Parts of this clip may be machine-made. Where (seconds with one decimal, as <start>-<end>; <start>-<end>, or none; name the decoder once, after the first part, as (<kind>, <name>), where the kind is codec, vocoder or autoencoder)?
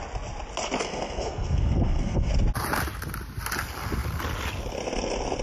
0.8-2.3 (codec, SNAC)